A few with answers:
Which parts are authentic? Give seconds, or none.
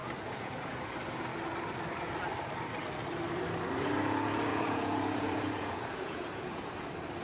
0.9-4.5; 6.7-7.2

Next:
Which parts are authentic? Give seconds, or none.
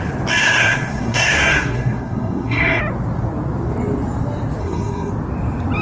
0.0-0.4; 2.8-4.6; 5.1-5.8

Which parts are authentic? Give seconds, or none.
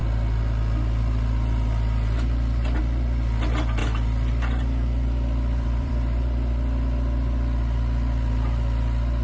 0.0-3.8; 5.9-9.2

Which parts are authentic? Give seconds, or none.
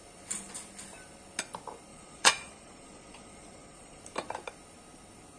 0.0-1.9; 4.0-5.4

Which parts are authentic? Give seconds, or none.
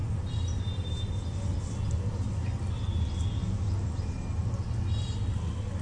0.0-5.8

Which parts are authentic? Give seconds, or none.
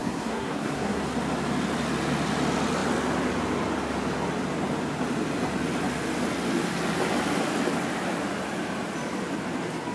1.0-9.9